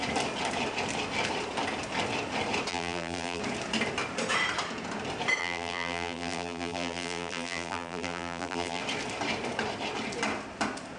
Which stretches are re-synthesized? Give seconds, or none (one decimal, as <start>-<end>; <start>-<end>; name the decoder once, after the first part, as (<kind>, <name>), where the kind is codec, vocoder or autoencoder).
2.7-3.4 (vocoder, BigVGAN v2); 5.4-8.8

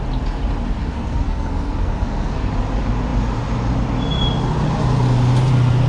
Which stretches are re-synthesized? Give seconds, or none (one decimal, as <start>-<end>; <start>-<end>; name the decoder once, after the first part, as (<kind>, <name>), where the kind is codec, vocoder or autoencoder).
0.8-2.5 (codec, SNAC)

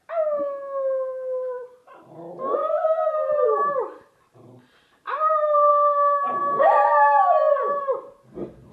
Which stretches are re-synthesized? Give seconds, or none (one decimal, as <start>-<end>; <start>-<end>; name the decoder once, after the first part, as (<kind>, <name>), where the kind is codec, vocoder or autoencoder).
2.6-5.7 (vocoder, BigVGAN v2)

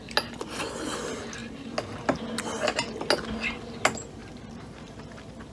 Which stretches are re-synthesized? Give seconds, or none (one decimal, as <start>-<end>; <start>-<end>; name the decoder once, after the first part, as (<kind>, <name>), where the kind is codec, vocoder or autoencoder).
4.2-4.9 (vocoder, BigVGAN v2)